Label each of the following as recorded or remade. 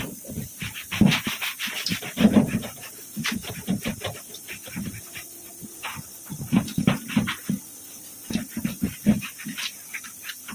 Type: recorded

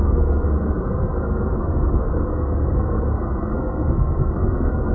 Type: remade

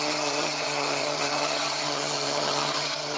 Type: remade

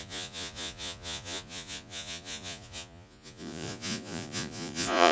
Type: remade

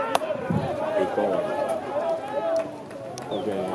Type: recorded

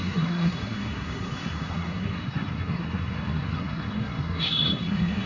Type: remade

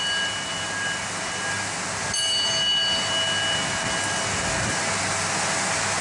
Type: recorded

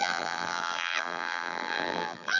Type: remade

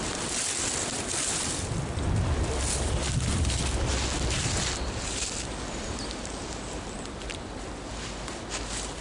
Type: recorded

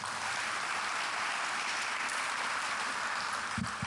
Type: recorded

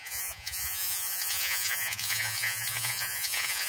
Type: remade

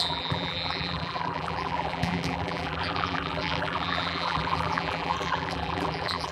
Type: remade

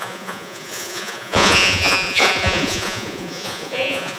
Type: remade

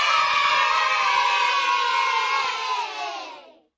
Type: recorded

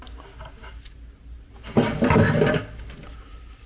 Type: recorded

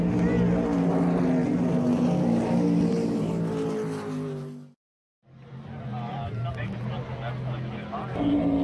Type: recorded